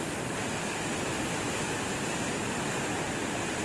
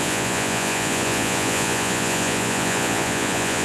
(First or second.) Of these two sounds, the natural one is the first